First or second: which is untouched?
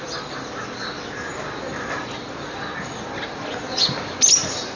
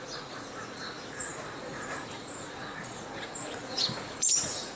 first